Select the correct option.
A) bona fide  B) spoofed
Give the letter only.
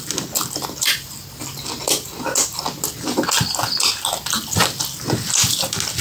A